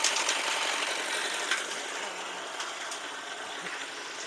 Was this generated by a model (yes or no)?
no